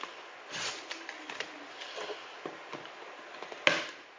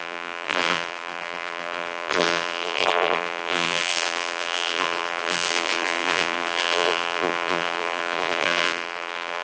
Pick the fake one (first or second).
second